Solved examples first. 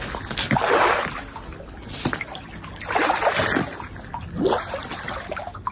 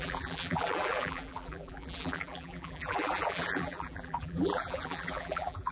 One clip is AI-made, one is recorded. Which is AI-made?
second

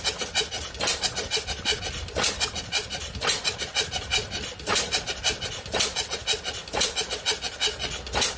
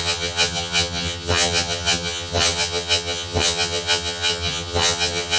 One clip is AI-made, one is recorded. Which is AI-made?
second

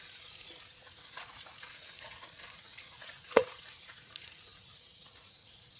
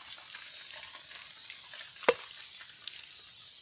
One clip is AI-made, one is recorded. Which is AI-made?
first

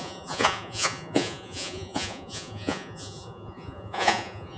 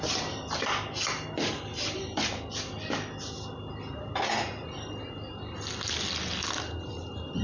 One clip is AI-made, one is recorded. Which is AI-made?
first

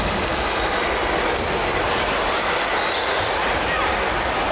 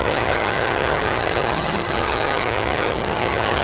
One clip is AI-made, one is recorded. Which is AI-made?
second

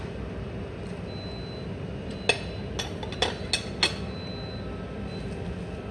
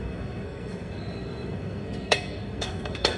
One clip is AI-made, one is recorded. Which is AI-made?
second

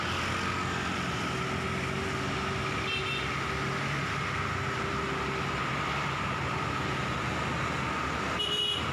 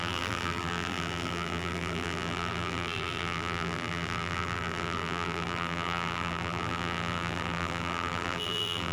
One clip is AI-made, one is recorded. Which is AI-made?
second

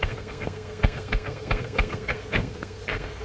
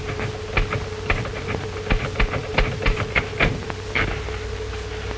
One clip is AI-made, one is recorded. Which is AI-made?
first